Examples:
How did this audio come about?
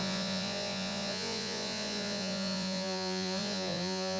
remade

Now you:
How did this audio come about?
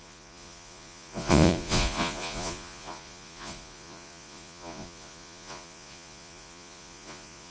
remade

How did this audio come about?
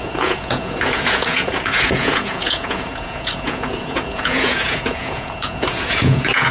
remade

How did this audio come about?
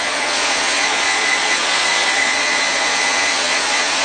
remade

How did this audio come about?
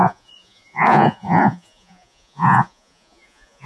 remade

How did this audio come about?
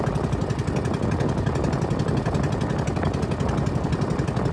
recorded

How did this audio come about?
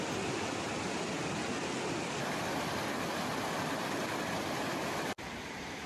recorded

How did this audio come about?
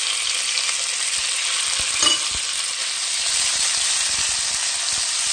recorded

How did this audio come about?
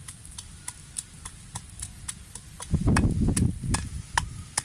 recorded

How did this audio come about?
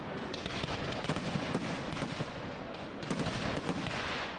remade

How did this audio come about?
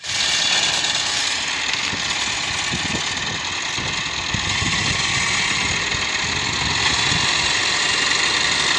recorded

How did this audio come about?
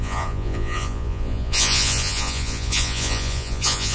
remade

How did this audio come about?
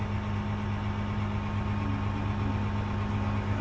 recorded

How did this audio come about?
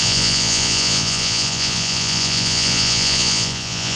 remade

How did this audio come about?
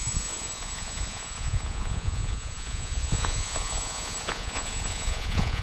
remade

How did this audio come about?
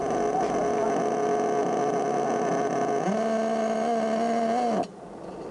recorded